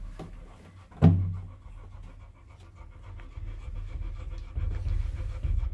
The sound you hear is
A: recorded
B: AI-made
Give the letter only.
A